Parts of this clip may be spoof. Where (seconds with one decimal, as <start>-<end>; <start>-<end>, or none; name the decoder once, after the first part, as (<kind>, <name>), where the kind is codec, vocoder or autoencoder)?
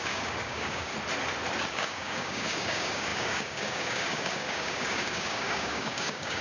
0.0-0.9 (codec, DAC); 1.7-6.4